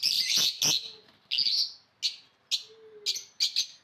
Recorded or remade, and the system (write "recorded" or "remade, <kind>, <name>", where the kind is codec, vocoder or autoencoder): recorded